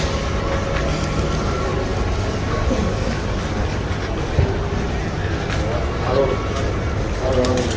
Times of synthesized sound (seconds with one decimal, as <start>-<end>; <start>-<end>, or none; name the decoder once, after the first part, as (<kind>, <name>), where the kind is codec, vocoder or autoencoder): none

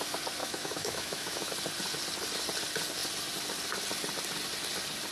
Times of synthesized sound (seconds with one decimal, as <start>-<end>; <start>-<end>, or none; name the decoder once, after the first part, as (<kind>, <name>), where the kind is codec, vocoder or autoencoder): 0.4-1.5 (autoencoder, DAC-VAE)

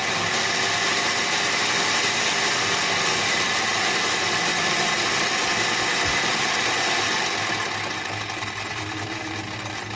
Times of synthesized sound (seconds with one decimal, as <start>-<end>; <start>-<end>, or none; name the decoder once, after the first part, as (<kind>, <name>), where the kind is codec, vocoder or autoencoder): none

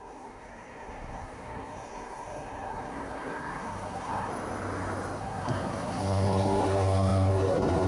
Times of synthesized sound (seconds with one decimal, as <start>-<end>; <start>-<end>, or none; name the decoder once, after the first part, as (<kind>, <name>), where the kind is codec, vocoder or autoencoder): 0.0-4.3 (codec, SNAC); 5.2-7.9

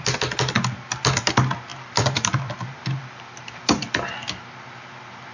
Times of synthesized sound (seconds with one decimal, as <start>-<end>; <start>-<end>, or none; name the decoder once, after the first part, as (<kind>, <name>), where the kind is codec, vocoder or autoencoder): 1.7-4.1 (vocoder, BigVGAN v2)

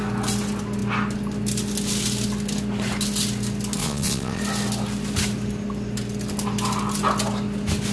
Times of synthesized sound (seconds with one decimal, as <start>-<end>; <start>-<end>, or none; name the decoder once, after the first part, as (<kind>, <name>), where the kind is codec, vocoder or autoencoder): 3.8-4.4 (vocoder, Vocos)